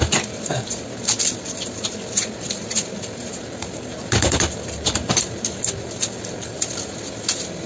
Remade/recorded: remade